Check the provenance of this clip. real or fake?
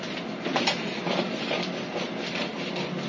real